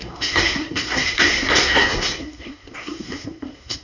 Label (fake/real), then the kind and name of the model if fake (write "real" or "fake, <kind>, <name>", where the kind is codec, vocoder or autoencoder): fake, codec, SNAC